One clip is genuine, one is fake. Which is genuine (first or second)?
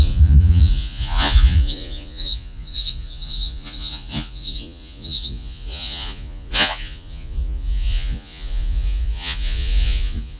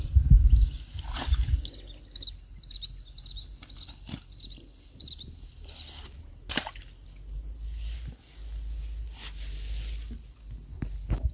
second